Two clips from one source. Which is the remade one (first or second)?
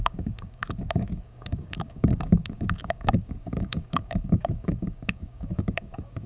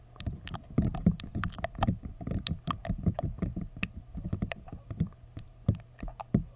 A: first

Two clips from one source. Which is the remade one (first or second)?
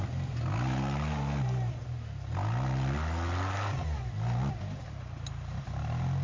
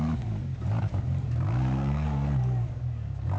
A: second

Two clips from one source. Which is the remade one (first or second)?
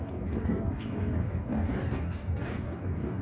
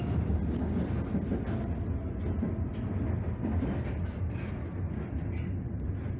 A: first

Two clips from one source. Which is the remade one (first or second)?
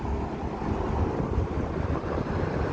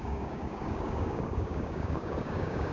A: second